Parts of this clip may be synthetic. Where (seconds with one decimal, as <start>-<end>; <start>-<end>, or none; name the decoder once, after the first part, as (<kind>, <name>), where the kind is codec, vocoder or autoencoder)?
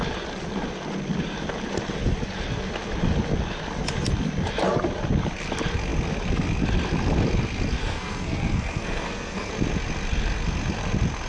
7.8-9.5 (codec, SNAC)